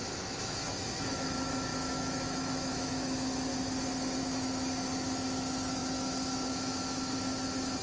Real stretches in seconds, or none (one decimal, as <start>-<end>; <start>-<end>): 3.5-4.2